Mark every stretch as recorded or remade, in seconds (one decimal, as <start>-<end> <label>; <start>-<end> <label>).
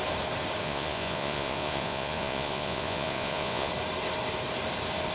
0.0-0.6 recorded; 0.6-3.7 remade; 3.7-5.1 recorded